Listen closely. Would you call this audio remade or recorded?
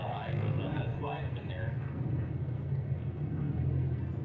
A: remade